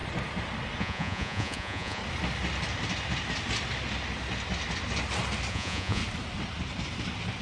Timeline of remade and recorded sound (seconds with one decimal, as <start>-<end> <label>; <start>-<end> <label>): 0.0-0.8 recorded; 0.8-2.0 remade; 2.0-5.5 recorded; 5.5-6.0 remade; 6.0-7.4 recorded